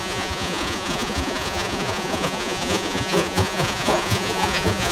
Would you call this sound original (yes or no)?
no